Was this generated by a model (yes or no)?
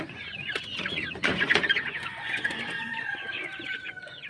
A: yes